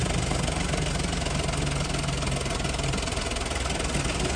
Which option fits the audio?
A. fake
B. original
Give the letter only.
B